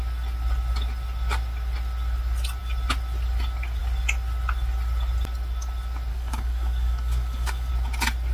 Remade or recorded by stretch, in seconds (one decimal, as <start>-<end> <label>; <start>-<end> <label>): 0.0-6.1 recorded; 6.1-7.7 remade; 7.7-8.3 recorded